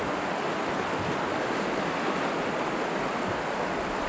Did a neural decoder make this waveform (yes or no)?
no